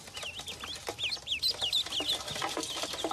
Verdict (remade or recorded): recorded